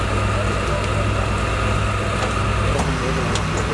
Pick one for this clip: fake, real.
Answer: real